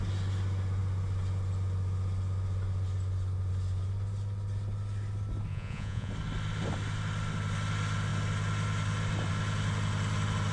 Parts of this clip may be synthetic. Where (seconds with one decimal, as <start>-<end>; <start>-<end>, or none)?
5.5-6.1